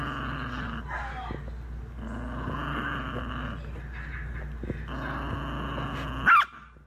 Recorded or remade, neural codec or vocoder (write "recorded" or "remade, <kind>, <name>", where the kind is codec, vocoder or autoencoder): recorded